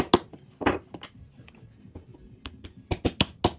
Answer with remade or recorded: recorded